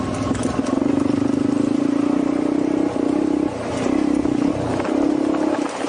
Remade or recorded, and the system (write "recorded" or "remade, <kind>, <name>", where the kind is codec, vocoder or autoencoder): recorded